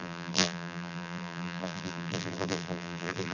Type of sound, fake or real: fake